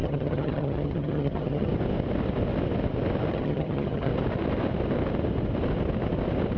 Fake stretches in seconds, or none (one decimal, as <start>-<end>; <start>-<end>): 0.0-1.7; 3.3-4.1